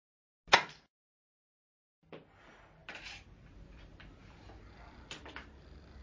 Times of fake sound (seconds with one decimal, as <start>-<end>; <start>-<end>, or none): none